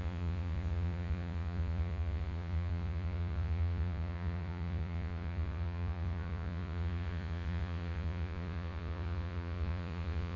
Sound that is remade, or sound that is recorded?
remade